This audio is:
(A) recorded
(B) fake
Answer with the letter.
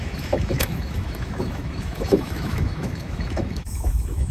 B